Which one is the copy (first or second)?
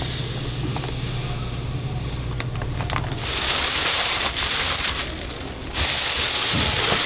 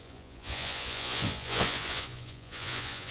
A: second